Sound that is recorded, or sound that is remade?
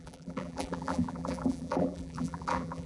remade